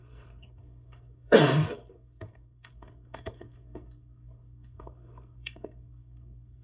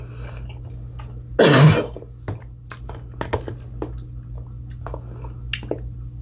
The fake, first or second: first